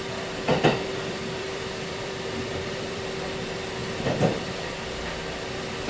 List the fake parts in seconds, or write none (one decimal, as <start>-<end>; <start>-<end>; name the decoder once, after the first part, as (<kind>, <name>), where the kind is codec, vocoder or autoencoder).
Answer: 0.5-3.0 (vocoder, BigVGAN v2); 3.8-4.7